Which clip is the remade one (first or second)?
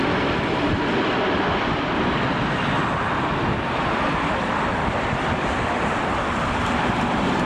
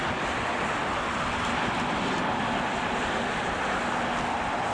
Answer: first